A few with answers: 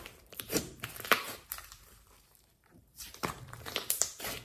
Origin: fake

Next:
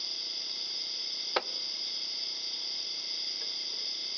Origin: real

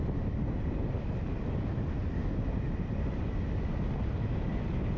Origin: real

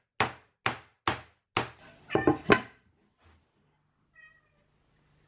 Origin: real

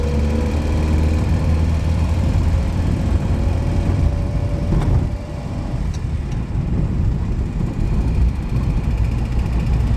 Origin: fake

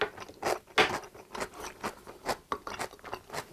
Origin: real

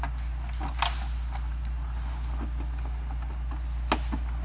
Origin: real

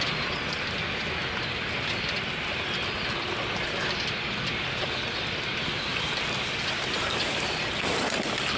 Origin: real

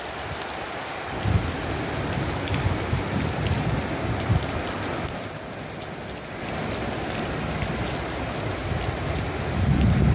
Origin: fake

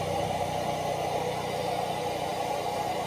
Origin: real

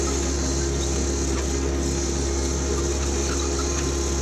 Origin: real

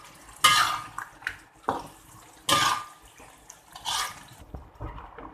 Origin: real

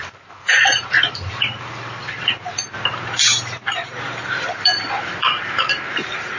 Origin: fake